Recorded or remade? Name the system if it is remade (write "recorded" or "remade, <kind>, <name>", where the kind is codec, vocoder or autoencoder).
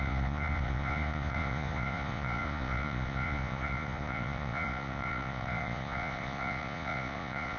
remade, vocoder, Vocos